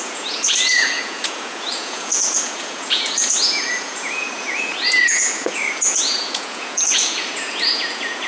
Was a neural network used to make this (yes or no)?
yes